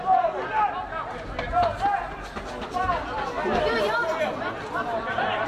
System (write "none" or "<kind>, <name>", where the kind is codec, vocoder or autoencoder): none